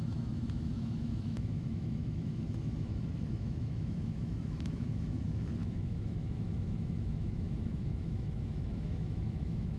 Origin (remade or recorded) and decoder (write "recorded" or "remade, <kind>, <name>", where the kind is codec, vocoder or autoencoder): remade, autoencoder, DAC-VAE